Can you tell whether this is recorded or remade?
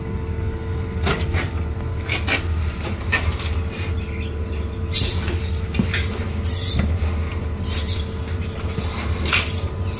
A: recorded